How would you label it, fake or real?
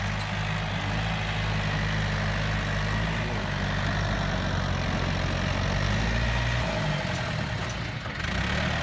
real